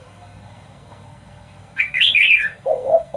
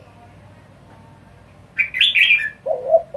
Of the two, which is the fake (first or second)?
first